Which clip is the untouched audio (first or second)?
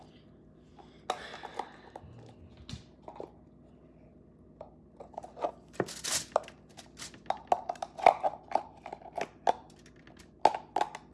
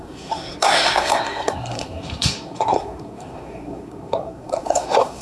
first